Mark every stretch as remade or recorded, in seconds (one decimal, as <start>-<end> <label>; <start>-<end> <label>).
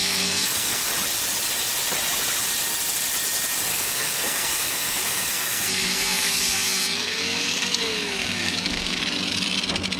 0.0-0.9 remade; 0.9-3.7 recorded; 3.7-9.0 remade; 9.0-10.0 recorded